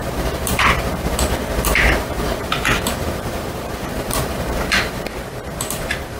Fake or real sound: fake